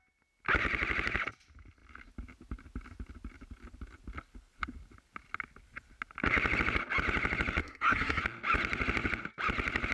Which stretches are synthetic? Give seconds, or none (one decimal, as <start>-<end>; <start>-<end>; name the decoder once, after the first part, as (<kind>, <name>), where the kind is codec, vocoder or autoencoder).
7.6-8.2 (codec, SNAC)